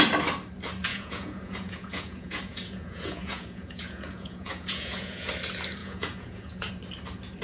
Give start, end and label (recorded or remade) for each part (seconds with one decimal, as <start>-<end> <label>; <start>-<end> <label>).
0.0-0.9 recorded; 0.9-5.3 remade; 5.3-5.8 recorded; 5.8-6.7 remade; 6.7-7.4 recorded